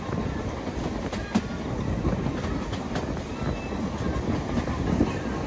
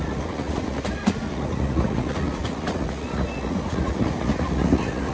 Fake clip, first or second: second